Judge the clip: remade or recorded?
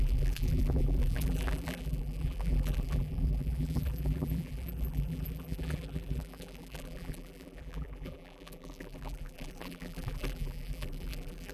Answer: remade